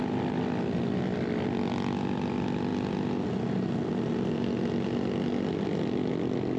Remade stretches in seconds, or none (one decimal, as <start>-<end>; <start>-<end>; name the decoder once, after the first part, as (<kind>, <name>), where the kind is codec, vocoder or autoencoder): none